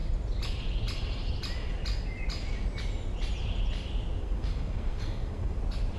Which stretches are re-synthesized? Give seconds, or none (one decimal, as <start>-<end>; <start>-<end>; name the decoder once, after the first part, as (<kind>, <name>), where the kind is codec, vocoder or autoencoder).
4.2-5.6 (codec, SNAC)